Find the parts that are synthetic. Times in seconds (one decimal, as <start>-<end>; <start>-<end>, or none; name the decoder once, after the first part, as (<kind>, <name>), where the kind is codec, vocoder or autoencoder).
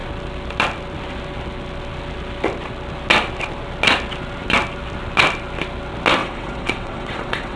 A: 6.2-7.6 (vocoder, WaveNeXt)